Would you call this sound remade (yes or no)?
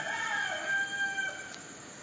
no